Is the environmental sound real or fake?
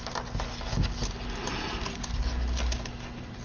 real